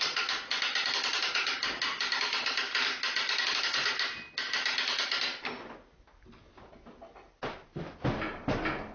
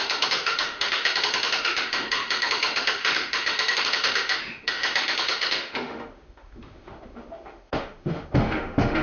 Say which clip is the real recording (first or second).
first